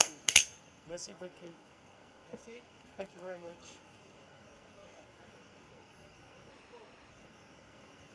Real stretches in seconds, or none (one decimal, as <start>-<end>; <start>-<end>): 6.5-7.1